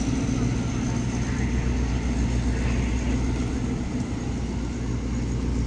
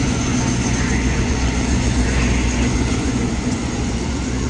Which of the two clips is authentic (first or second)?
first